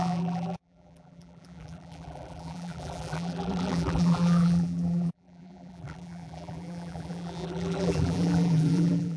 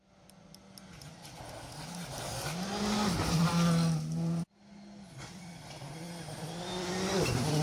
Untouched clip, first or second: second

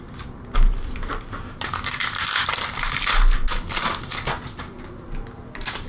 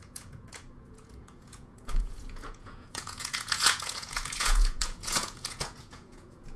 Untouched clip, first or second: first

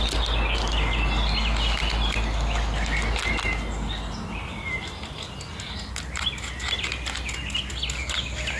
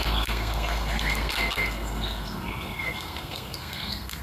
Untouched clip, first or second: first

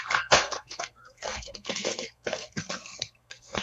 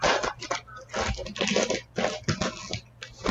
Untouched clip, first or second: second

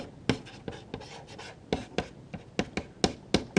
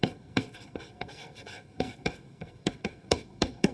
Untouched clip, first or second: first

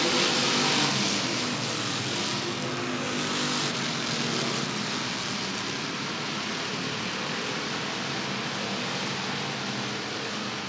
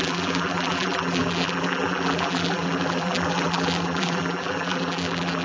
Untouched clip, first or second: first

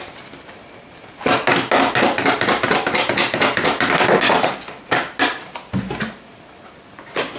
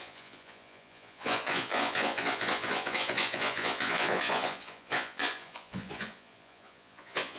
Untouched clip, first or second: first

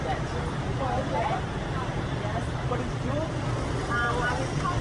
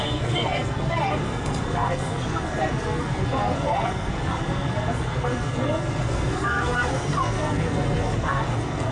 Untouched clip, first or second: first